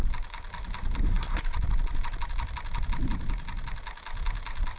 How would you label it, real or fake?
real